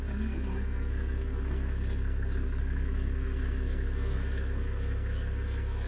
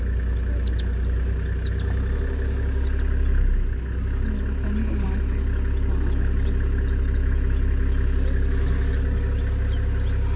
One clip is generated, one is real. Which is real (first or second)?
second